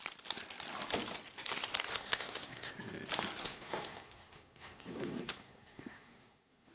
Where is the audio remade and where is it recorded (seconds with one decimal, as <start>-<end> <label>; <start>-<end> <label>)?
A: 0.0-1.9 recorded; 1.9-2.7 remade; 2.7-3.4 recorded; 3.4-6.7 remade